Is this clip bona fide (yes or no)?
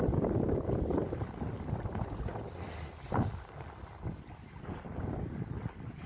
yes